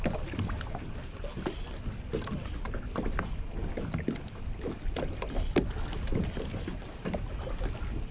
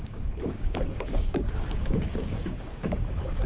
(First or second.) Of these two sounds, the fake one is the second